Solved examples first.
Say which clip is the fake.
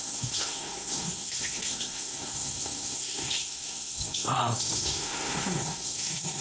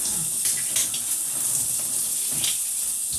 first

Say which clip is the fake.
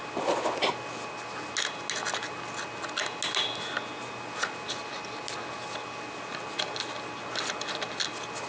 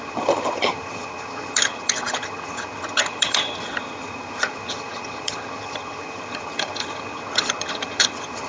second